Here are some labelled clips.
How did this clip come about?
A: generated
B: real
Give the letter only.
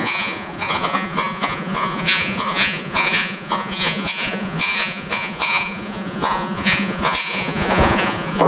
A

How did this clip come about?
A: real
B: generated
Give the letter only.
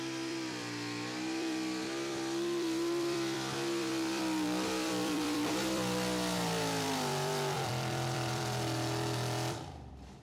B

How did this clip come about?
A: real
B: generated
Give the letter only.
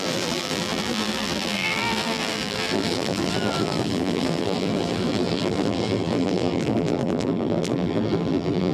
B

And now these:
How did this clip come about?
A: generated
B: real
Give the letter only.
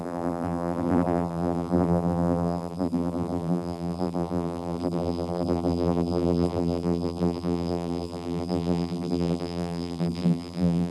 A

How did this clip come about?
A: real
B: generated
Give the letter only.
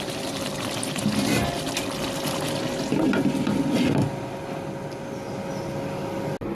A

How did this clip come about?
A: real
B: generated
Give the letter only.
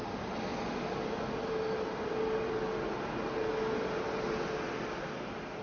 A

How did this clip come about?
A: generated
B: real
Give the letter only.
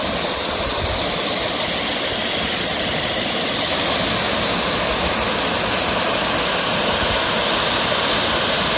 B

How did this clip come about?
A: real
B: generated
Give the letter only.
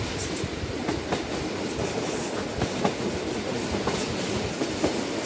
A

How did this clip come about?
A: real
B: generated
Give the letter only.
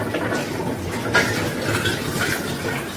A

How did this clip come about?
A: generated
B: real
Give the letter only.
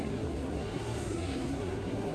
A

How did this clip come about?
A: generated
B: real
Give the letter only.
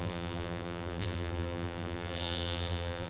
A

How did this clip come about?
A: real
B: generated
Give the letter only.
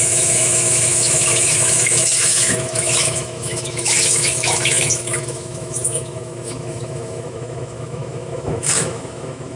B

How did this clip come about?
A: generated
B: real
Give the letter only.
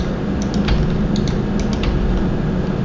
B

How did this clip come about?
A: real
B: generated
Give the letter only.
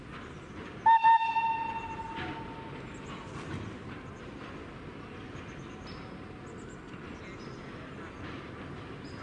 A